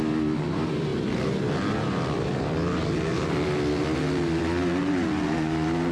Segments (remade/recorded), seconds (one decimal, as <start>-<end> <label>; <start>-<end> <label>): 0.0-5.9 recorded